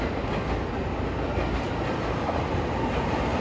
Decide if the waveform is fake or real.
real